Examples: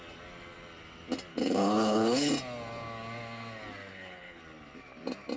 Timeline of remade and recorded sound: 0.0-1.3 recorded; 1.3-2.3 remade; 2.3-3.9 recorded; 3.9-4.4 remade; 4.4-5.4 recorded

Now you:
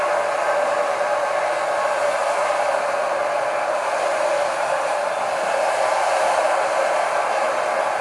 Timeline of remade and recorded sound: 0.0-8.0 recorded